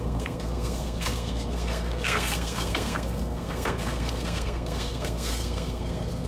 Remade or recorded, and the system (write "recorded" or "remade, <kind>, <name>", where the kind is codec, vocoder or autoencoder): remade, codec, SNAC